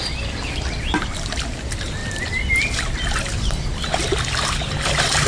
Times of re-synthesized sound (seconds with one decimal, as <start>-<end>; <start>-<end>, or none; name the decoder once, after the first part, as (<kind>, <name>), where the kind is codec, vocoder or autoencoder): none